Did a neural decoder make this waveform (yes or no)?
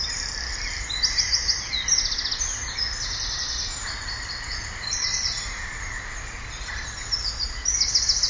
no